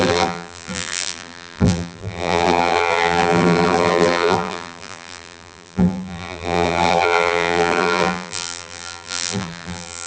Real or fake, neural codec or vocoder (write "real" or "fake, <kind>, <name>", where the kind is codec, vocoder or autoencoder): fake, vocoder, BigVGAN v2